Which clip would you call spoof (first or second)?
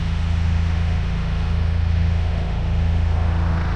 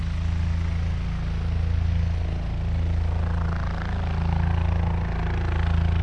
first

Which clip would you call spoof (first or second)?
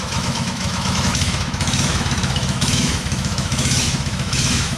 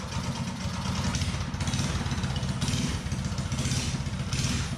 first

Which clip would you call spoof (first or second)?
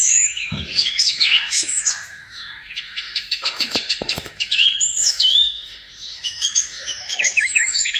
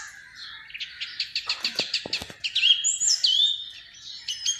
first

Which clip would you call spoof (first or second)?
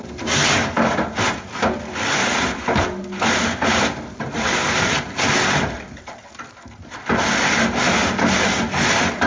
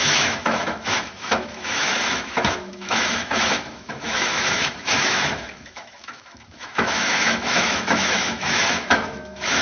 second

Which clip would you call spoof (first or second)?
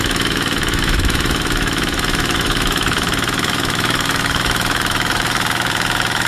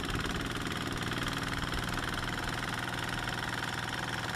first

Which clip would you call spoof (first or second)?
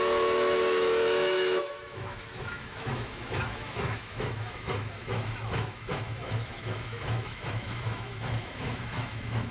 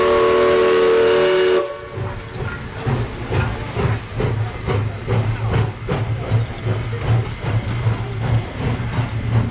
first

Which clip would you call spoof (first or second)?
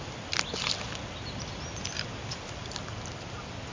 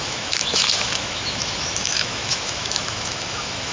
second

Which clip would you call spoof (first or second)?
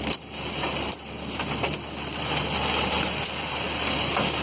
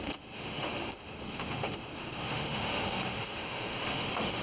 second